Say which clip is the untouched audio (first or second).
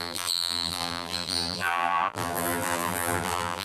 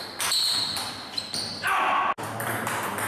second